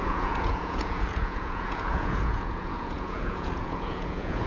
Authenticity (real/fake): fake